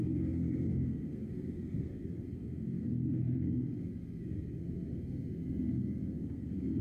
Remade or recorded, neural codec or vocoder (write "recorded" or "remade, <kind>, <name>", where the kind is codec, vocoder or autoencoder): remade, codec, SNAC